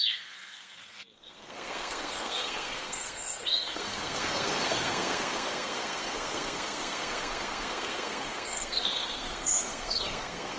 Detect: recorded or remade remade